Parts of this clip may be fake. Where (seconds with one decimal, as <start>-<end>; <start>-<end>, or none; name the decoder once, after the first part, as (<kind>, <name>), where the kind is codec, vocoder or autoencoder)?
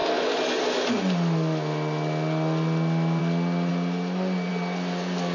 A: none